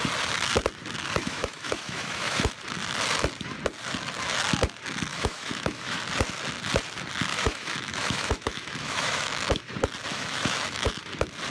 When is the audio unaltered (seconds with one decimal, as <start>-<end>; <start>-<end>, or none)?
0.0-1.2; 2.5-5.1; 6.0-7.3; 9.6-10.1; 11.0-11.5